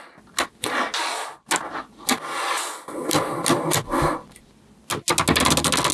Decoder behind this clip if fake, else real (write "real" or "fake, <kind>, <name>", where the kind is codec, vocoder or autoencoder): real